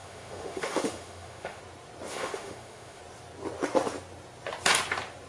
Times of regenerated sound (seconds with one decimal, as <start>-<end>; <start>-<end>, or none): 0.0-1.6; 2.1-3.0